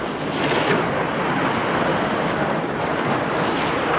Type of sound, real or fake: real